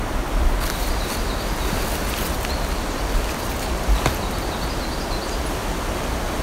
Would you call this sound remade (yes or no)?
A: no